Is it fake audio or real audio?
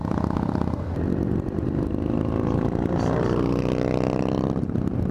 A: fake